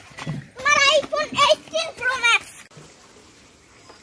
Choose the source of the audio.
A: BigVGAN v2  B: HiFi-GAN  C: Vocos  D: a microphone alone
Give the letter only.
D